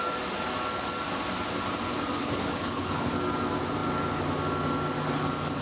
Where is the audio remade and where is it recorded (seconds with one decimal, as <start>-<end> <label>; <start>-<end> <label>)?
0.0-2.2 recorded; 2.2-3.1 remade; 3.1-5.6 recorded